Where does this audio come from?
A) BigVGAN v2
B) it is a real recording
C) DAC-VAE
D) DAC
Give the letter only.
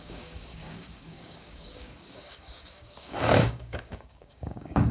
D